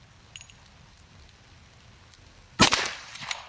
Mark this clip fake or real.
real